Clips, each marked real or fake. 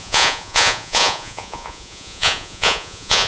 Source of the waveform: fake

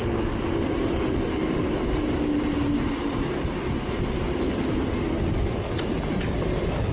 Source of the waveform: real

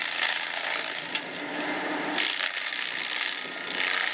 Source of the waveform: real